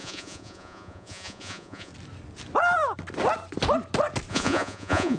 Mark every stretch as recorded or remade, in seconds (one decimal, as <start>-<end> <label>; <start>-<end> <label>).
0.0-1.9 remade; 1.9-4.3 recorded; 4.3-5.2 remade